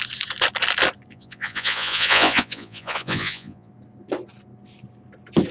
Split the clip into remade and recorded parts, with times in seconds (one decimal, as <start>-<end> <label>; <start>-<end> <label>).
0.0-1.1 recorded; 1.1-3.7 remade; 3.7-5.5 recorded